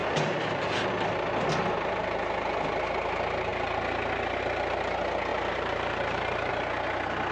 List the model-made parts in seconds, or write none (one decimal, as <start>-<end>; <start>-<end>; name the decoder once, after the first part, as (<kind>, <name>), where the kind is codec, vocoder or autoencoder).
0.0-0.9 (vocoder, BigVGAN v2); 5.3-6.5